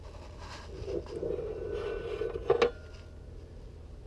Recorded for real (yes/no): yes